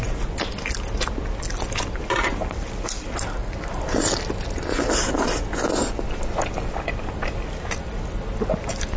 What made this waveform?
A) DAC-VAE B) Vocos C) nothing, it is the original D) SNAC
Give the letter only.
C